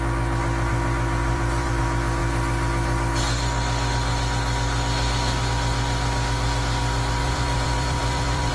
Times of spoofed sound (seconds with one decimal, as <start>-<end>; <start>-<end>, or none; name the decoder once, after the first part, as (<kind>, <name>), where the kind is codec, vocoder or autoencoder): 1.2-1.8 (vocoder, BigVGAN v2); 7.2-8.5